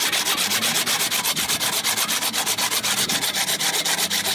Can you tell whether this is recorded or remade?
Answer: recorded